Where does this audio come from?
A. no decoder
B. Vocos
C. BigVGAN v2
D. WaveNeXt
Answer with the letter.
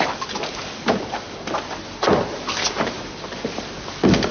A